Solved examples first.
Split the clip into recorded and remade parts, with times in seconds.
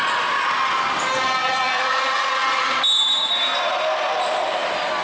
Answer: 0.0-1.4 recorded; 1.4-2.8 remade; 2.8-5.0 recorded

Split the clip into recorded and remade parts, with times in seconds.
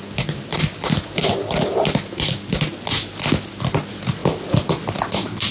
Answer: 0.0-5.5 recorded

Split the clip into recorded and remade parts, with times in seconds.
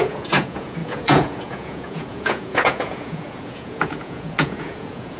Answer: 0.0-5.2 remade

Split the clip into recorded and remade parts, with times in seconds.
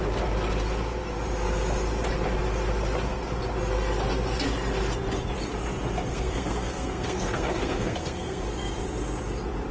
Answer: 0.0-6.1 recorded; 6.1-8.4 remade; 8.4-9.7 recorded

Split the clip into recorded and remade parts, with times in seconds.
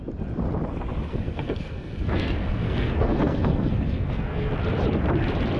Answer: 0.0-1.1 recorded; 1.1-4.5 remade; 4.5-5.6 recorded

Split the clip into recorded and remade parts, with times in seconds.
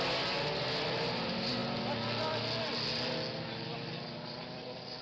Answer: 0.0-3.7 recorded; 3.7-5.0 remade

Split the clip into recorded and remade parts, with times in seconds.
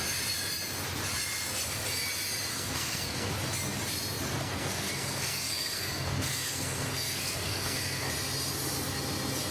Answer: 0.0-2.5 recorded; 2.5-3.3 remade; 3.3-4.3 recorded; 4.3-8.1 remade; 8.1-9.5 recorded